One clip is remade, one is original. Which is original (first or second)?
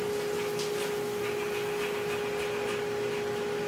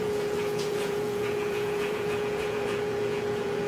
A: first